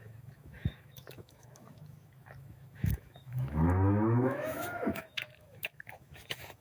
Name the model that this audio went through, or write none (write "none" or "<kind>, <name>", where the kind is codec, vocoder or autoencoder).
autoencoder, DAC-VAE